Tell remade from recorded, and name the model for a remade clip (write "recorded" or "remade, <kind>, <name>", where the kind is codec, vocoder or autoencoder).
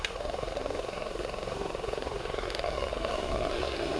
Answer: remade, codec, SNAC